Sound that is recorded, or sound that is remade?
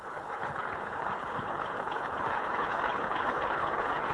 remade